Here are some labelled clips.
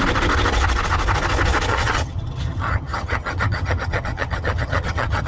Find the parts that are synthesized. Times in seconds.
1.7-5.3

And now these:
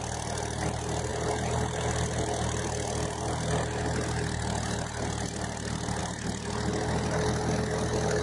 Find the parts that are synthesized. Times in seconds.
none

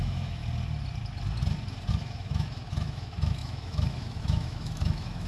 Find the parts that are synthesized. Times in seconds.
0.0-0.4; 1.9-5.3

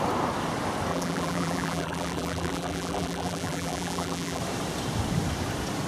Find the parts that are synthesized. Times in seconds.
0.9-4.4

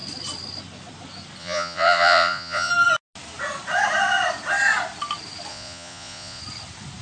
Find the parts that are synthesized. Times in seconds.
1.4-2.7; 5.5-6.4

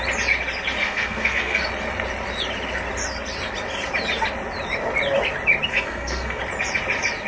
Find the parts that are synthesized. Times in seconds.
0.8-1.6; 5.7-6.4

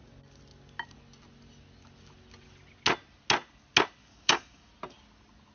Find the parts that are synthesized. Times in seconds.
4.0-4.7